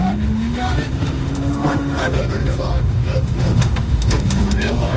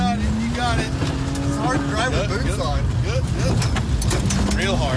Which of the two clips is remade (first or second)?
first